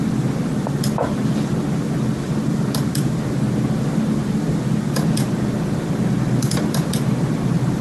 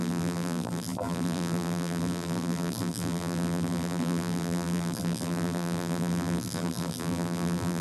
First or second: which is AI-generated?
second